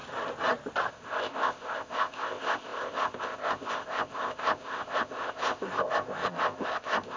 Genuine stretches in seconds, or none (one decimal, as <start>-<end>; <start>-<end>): 0.0-0.9